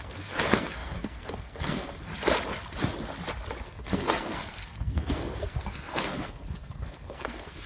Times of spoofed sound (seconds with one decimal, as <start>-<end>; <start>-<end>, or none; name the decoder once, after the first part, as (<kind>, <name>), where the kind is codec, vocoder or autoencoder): 0.0-2.1 (codec, SNAC); 3.6-7.7